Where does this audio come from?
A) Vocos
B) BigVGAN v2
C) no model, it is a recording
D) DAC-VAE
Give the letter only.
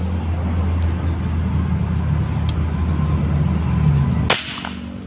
C